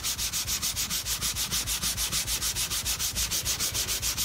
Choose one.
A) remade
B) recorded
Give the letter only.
B